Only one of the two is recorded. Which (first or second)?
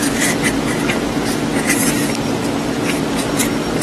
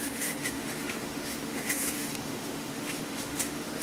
first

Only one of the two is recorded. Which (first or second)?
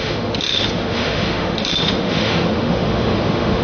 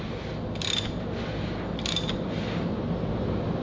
second